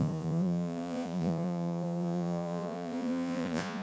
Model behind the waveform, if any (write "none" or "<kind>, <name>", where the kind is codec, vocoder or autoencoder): vocoder, Vocos